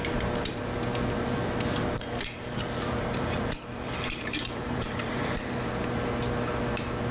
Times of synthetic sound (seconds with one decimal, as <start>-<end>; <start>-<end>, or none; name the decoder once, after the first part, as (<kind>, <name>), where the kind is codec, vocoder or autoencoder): 0.0-0.6 (vocoder, BigVGAN v2); 1.4-5.7